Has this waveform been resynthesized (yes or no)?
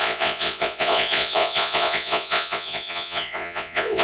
yes